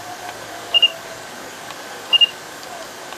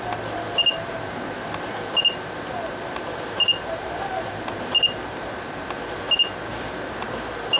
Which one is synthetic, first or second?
first